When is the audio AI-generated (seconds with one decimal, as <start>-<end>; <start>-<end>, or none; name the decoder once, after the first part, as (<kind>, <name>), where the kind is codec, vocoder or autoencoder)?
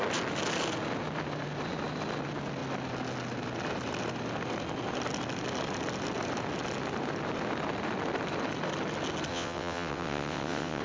9.3-10.8 (vocoder, WaveNeXt)